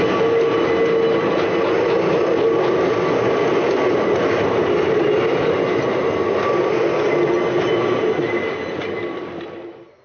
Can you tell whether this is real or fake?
real